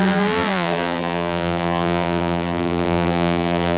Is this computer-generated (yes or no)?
yes